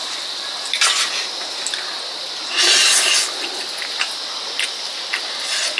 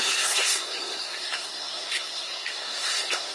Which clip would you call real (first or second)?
first